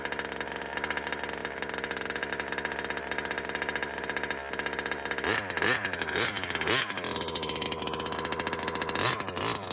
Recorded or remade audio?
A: recorded